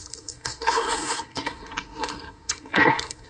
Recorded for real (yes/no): no